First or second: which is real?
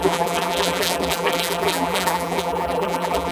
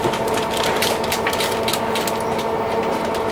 second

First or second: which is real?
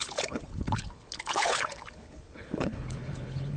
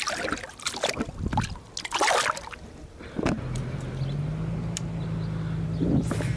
second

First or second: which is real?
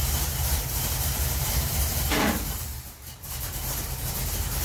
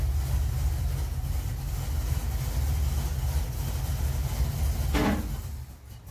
second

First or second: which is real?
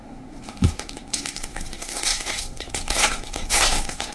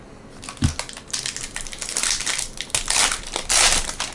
second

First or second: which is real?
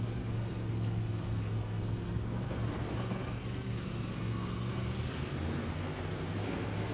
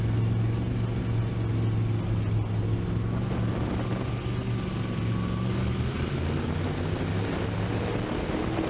second